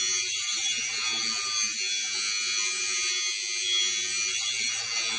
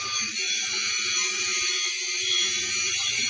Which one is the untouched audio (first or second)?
first